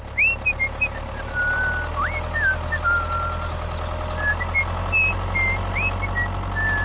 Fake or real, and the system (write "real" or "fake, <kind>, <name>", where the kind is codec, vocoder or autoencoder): real